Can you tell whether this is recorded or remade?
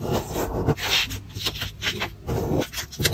recorded